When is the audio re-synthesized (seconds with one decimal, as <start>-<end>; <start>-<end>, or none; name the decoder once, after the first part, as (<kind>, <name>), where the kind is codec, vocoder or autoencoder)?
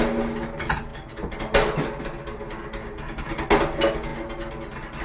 2.8-3.3 (codec, DAC)